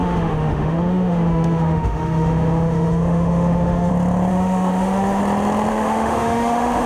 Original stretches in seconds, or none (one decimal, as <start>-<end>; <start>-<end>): 3.9-4.3; 5.2-5.7